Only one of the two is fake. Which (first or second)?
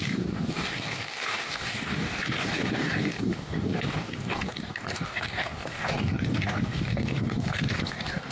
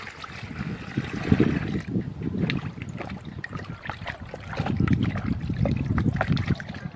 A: first